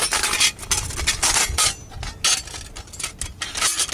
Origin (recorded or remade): recorded